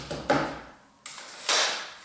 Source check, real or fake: real